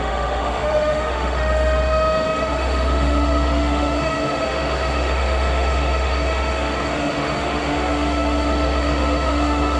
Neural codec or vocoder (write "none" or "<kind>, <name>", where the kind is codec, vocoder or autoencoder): autoencoder, DAC-VAE